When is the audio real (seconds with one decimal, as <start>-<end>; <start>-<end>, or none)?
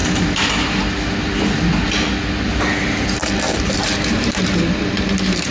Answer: 0.8-3.2; 4.6-5.5